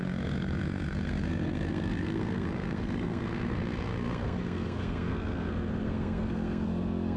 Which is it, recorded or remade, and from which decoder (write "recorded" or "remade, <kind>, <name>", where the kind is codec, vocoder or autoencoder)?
remade, codec, SNAC